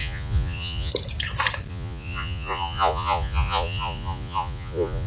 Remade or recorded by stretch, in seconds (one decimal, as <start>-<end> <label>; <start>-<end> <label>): 0.0-0.9 remade; 0.9-1.7 recorded; 1.7-5.1 remade